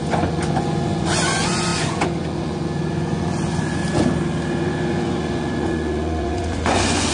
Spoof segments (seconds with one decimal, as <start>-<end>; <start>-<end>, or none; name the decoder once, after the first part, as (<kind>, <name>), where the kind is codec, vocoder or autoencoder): 0.0-3.8 (vocoder, Vocos); 4.5-7.1